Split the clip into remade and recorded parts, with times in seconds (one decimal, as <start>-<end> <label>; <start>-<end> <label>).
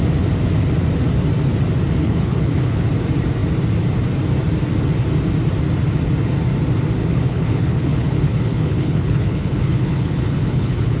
0.0-2.0 recorded; 2.0-2.9 remade; 2.9-7.0 recorded; 7.0-11.0 remade